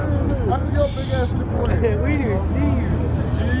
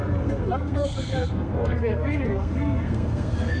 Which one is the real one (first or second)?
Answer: first